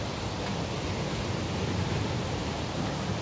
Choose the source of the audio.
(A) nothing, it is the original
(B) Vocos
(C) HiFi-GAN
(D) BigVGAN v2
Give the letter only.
A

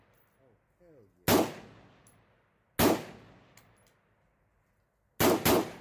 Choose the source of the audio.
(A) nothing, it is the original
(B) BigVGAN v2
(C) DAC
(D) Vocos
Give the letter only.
A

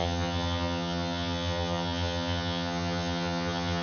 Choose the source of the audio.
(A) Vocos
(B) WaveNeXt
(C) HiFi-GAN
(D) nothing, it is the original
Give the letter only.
C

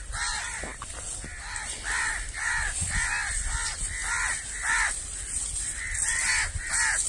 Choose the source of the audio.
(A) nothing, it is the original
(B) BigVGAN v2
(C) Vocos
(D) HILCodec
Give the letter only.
A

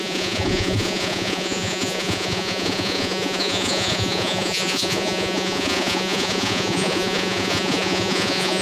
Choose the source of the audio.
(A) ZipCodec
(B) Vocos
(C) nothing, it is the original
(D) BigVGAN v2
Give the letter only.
B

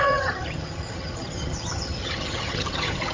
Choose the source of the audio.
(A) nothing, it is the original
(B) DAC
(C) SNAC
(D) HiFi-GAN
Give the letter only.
D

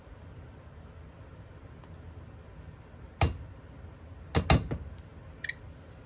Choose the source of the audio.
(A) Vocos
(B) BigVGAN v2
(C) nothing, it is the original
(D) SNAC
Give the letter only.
C